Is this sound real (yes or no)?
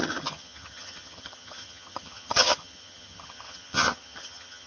no